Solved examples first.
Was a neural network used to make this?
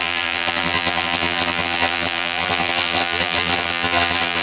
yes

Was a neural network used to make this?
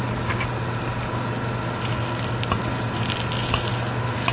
no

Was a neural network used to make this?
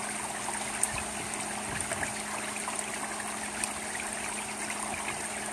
no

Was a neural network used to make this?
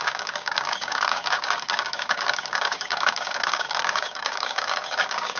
yes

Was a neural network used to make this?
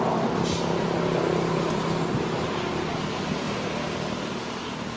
no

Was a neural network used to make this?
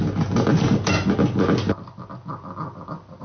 no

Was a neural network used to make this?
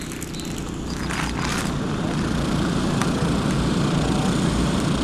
yes